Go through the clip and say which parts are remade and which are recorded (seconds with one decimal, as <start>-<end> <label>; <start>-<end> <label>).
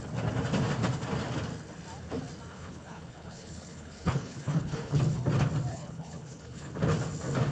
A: 0.0-2.5 recorded; 2.5-5.0 remade; 5.0-5.7 recorded; 5.7-6.7 remade; 6.7-7.5 recorded